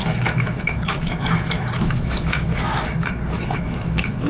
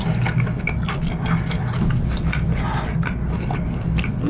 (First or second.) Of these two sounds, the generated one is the first